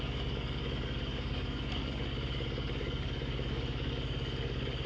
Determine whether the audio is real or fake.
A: fake